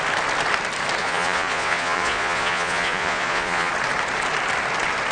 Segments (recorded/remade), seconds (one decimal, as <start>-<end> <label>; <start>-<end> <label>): 0.0-1.0 recorded; 1.0-3.7 remade; 3.7-5.1 recorded